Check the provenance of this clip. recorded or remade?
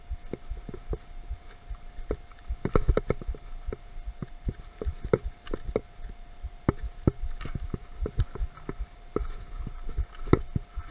recorded